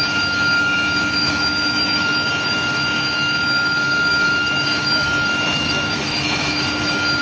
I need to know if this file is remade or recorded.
remade